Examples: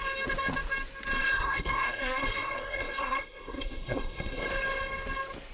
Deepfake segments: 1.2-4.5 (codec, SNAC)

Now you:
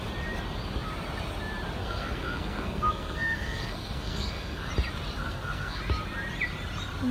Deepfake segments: 1.8-4.7 (codec, SNAC); 5.2-5.8

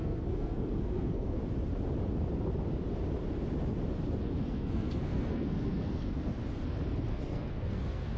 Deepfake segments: 0.0-1.4 (codec, SNAC); 4.2-6.3; 7.1-8.2

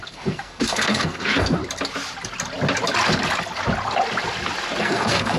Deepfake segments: 0.0-1.6 (codec, SNAC); 4.8-5.4

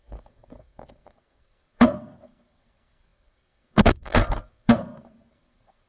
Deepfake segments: 0.0-5.9 (codec, SNAC)